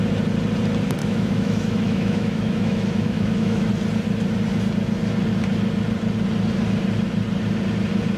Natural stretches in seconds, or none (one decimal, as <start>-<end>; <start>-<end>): 0.0-1.0; 3.7-8.2